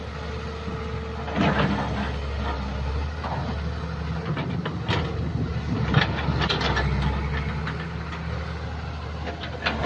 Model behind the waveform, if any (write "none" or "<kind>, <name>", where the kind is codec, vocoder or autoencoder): none